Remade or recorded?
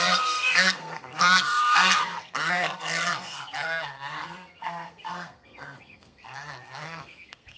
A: remade